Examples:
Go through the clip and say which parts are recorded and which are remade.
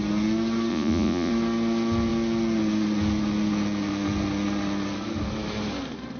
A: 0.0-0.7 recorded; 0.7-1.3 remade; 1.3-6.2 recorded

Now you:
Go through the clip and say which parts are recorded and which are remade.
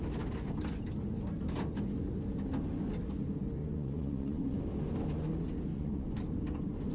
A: 0.0-3.6 recorded; 3.6-4.6 remade; 4.6-5.7 recorded; 5.7-6.2 remade; 6.2-6.9 recorded